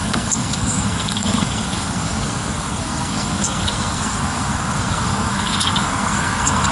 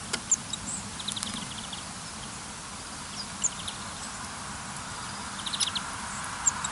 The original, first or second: second